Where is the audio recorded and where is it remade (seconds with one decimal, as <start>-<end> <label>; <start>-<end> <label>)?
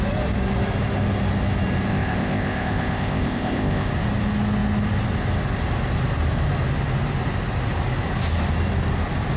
0.0-1.9 recorded; 1.9-3.9 remade; 3.9-9.4 recorded